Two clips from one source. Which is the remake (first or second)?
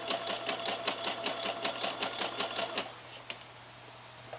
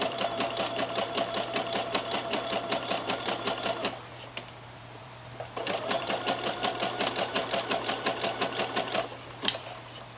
second